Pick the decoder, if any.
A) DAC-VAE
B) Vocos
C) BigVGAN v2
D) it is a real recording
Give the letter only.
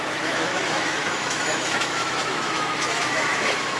A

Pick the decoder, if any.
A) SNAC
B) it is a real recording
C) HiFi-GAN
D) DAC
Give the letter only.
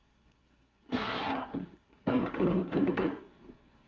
A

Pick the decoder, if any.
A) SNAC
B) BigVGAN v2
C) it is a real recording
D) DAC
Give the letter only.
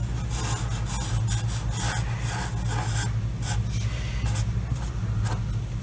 C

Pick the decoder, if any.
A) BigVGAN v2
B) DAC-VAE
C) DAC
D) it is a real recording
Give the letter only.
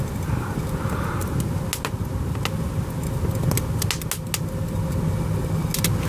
D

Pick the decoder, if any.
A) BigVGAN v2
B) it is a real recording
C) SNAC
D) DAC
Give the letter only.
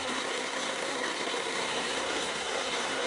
C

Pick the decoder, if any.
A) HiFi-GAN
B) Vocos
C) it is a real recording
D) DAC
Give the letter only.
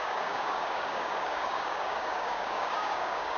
D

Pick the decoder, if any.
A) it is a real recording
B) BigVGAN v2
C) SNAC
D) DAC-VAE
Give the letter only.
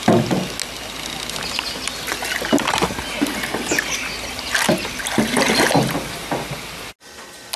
A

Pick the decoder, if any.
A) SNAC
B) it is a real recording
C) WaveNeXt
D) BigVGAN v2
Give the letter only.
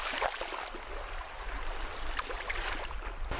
B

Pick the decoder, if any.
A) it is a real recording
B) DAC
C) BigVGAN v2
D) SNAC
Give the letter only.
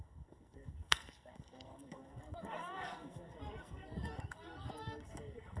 D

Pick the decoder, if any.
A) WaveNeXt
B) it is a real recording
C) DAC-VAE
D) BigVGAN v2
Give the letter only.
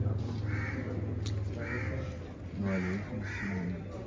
B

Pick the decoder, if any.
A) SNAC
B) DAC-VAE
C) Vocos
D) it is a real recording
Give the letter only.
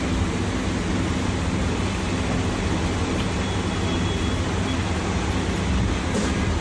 D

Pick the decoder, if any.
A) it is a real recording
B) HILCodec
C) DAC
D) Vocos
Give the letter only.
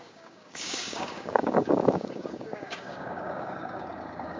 C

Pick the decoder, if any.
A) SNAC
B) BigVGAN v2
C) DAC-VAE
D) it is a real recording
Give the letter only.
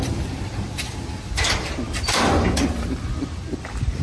D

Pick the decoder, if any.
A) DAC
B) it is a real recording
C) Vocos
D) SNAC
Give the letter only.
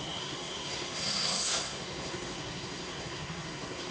D